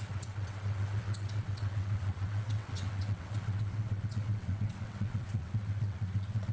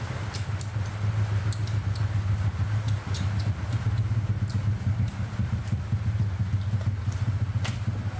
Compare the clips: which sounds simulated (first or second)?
first